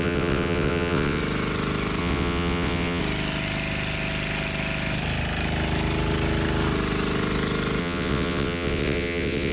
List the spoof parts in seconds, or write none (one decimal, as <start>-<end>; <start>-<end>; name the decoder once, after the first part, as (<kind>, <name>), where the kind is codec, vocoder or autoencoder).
0.0-1.2 (vocoder, WaveNeXt); 2.0-3.0; 7.8-9.5